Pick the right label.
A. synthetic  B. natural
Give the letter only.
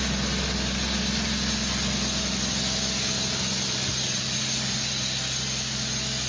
B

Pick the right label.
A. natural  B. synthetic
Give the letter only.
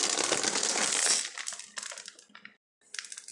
A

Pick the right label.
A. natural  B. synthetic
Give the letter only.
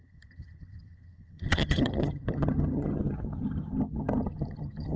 B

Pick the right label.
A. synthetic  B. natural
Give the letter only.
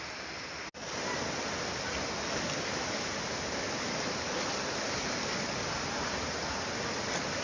B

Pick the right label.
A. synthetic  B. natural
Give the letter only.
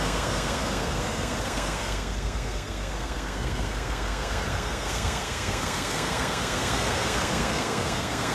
A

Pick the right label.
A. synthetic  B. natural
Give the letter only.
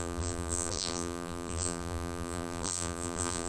A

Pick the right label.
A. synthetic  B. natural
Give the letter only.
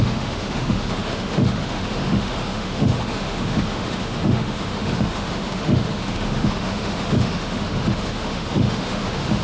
A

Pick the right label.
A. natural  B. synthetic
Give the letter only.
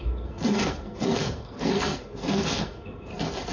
B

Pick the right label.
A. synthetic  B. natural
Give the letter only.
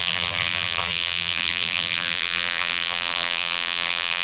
A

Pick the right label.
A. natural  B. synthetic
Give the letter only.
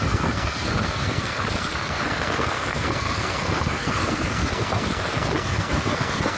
B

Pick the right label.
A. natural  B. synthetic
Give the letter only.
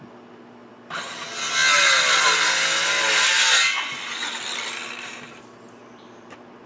A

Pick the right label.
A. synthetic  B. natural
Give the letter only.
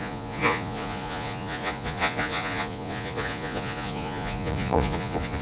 A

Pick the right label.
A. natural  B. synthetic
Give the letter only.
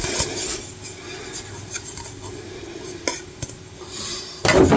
A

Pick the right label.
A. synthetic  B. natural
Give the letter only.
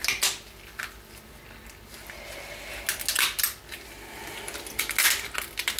B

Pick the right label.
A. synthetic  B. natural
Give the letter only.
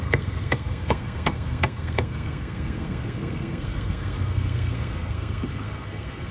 A